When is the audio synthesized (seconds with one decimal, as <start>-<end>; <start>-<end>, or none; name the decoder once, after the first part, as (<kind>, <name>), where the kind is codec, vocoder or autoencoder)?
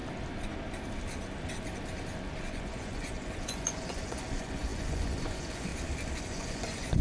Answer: 2.4-5.7 (vocoder, Vocos); 6.2-7.0